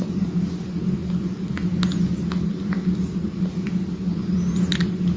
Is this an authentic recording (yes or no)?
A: yes